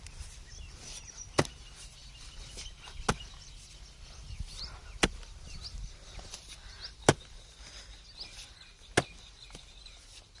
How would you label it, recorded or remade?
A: recorded